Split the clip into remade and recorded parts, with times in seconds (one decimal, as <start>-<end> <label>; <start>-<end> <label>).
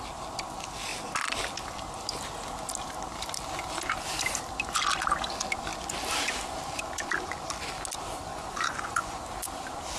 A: 0.0-8.3 recorded; 8.3-9.2 remade; 9.2-10.0 recorded